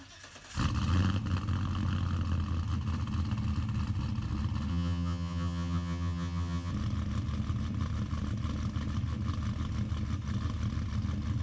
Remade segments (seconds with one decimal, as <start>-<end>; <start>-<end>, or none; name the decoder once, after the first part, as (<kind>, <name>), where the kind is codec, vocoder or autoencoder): 4.7-6.7 (vocoder, HiFi-GAN)

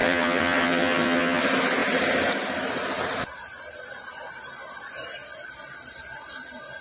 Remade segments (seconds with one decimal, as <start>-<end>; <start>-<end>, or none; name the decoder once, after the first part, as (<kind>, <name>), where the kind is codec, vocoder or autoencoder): 0.0-1.4 (vocoder, HiFi-GAN)

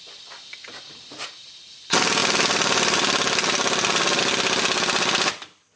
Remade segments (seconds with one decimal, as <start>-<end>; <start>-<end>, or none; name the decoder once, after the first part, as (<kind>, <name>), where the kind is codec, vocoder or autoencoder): none